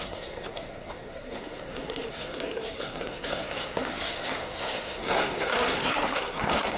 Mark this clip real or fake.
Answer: fake